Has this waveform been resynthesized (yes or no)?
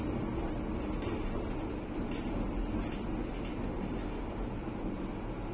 no